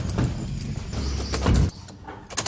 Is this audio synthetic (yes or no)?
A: no